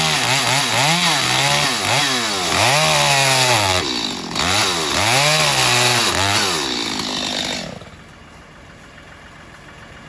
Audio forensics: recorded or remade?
recorded